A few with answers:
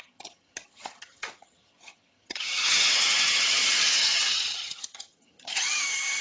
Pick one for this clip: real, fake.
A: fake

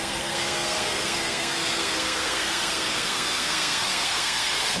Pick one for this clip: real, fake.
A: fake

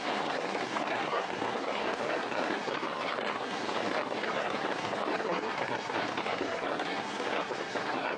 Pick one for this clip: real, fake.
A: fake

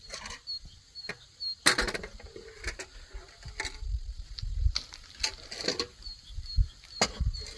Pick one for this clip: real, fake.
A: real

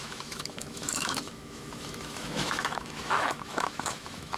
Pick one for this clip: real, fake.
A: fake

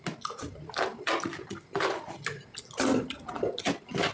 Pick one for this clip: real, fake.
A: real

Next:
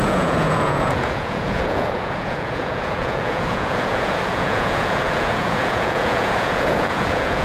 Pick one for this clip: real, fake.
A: fake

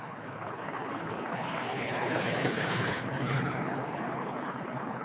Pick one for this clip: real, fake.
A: fake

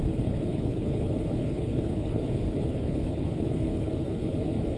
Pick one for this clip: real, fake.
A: fake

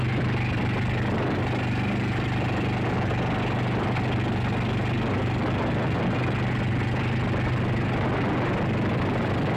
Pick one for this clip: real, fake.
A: real